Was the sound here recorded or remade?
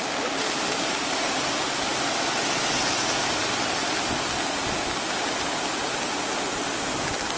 recorded